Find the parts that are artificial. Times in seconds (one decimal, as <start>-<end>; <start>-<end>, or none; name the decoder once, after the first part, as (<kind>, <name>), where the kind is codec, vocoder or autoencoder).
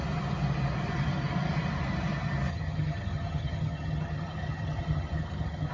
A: 2.5-5.7 (vocoder, HiFi-GAN)